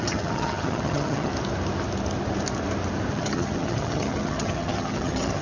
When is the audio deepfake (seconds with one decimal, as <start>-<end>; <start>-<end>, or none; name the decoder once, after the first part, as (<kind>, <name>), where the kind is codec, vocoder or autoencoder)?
0.0-1.3 (vocoder, HiFi-GAN); 3.1-5.4